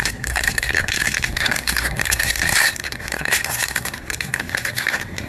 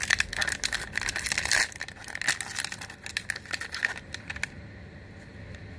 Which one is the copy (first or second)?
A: first